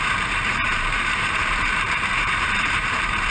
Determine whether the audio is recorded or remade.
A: remade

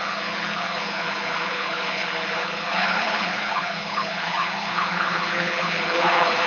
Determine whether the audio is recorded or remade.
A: remade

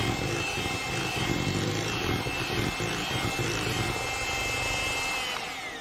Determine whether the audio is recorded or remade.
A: recorded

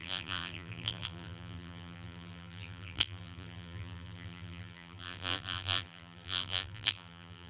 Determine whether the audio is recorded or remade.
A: remade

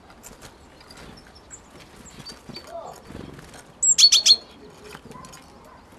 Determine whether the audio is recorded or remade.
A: recorded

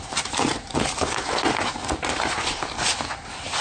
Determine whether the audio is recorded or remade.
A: recorded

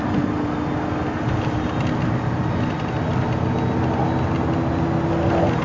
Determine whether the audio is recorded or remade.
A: recorded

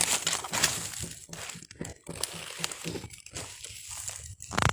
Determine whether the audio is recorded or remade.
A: recorded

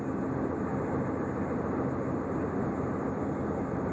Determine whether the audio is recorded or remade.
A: recorded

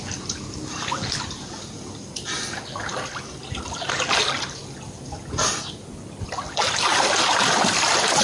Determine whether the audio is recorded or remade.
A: recorded